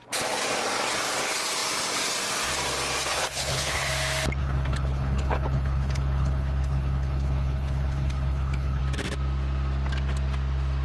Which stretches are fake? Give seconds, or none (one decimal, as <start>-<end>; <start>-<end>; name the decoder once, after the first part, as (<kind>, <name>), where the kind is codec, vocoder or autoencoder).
3.1-3.9 (codec, HILCodec); 4.4-8.8